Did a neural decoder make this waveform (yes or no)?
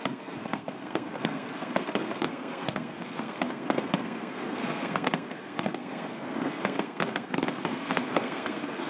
yes